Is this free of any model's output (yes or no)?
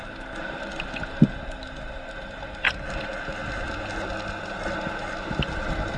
yes